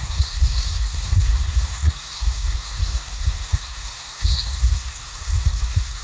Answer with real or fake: fake